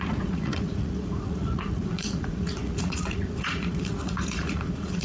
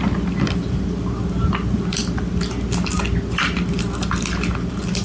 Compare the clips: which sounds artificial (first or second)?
first